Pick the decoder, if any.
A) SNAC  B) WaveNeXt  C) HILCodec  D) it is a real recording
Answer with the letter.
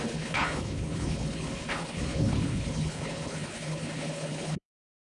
C